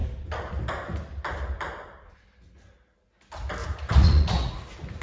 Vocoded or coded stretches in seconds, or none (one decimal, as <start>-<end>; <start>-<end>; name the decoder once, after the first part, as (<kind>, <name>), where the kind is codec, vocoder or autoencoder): 3.6-4.5 (vocoder, Vocos)